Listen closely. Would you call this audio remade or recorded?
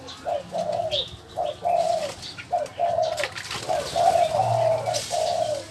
recorded